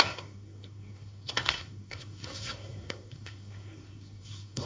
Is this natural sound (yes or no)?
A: no